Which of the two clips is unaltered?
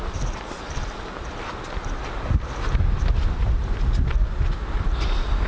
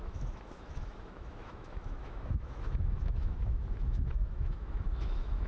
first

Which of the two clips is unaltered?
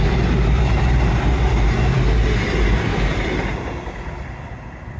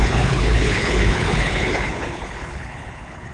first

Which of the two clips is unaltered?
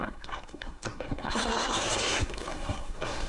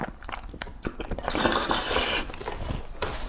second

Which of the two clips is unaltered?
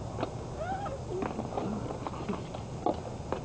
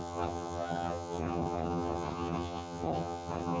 first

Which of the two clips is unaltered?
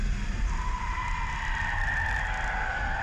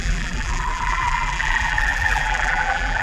first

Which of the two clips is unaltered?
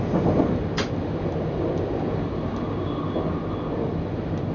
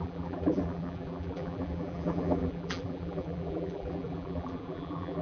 first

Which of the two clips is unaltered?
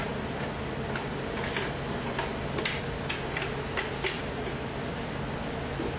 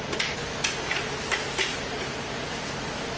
first